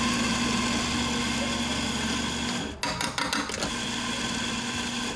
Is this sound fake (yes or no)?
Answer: no